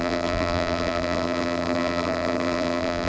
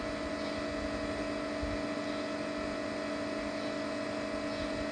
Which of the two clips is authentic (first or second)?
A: second